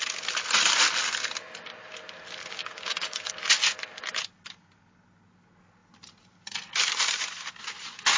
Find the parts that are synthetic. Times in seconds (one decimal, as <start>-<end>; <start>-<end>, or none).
2.4-3.3